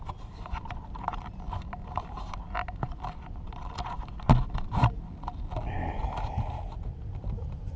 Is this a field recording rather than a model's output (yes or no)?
yes